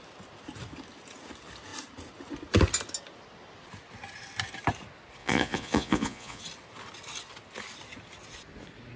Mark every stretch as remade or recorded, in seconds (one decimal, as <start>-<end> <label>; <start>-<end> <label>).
0.0-5.2 recorded; 5.2-6.4 remade; 6.4-9.0 recorded